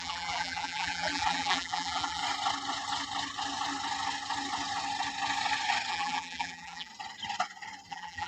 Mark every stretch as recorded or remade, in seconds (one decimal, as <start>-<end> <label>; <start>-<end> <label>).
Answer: 0.0-2.2 remade; 2.2-5.9 recorded; 5.9-6.9 remade; 6.9-7.9 recorded; 7.9-8.3 remade